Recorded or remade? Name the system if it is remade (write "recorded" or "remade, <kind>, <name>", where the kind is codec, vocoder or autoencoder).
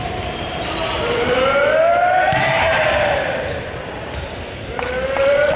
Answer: remade, vocoder, BigVGAN v2